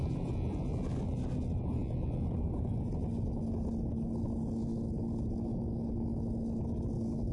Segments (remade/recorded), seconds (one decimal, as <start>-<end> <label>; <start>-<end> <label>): 0.0-7.3 recorded